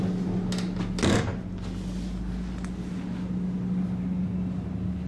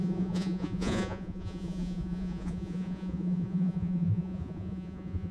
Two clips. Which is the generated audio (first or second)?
second